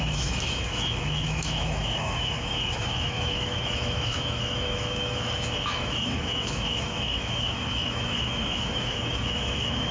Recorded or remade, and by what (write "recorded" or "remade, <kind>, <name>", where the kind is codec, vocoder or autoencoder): remade, autoencoder, DAC-VAE